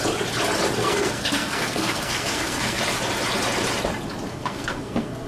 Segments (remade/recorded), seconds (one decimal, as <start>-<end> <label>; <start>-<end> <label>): 0.0-0.8 recorded; 0.8-2.8 remade; 2.8-4.3 recorded; 4.3-5.3 remade